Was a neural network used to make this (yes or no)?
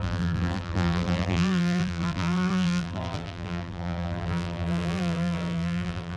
yes